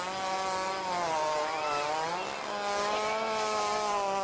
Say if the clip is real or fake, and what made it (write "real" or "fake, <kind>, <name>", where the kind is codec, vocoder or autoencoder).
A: real